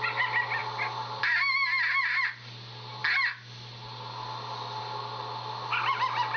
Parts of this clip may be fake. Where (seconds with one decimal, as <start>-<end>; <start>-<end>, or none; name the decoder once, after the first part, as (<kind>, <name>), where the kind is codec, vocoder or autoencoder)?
none